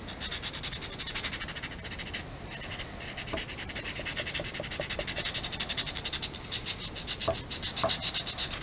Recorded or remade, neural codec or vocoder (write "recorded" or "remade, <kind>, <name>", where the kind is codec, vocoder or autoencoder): recorded